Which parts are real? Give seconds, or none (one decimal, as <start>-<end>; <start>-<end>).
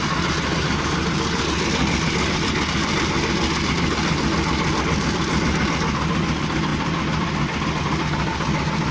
0.0-8.9